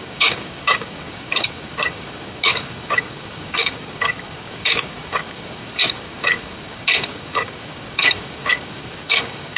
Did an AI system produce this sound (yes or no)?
yes